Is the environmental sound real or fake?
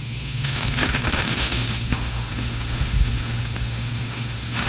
fake